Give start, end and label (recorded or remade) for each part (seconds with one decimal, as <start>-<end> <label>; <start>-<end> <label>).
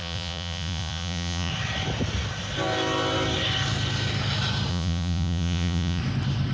0.0-1.5 remade; 1.5-4.7 recorded; 4.7-6.0 remade; 6.0-6.5 recorded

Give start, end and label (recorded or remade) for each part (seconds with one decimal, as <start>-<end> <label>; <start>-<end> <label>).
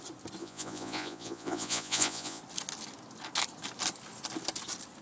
0.0-0.4 recorded; 0.4-2.4 remade; 2.4-5.0 recorded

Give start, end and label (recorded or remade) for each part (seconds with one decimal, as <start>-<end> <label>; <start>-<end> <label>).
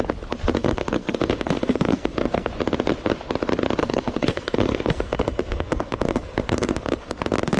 0.0-0.6 recorded; 0.6-2.5 remade; 2.5-3.8 recorded; 3.8-7.1 remade; 7.1-7.6 recorded